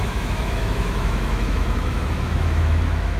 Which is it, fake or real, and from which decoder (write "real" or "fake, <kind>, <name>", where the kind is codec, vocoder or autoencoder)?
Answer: fake, autoencoder, DAC-VAE